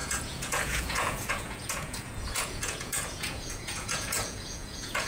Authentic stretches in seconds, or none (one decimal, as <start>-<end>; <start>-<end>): none